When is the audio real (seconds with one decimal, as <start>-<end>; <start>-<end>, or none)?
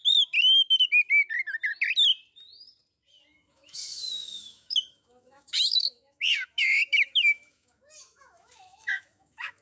0.0-3.3